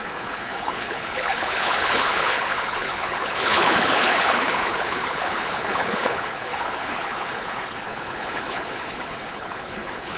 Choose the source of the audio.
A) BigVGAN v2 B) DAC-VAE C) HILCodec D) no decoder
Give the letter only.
C